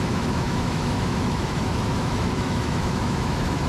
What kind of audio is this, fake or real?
fake